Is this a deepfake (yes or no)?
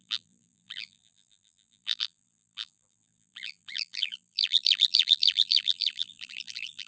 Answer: yes